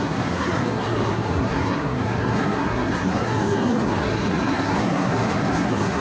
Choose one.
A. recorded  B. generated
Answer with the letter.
B